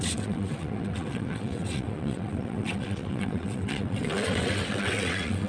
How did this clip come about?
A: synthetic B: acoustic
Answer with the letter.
A